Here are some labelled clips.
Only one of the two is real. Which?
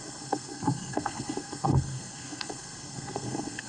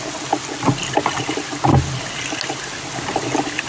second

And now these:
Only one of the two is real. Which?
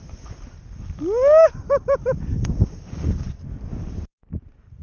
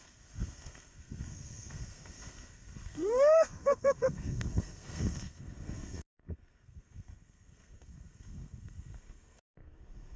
first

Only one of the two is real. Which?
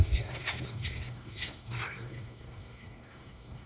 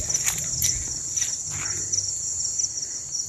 second